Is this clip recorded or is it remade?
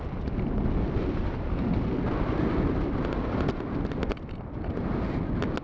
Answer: recorded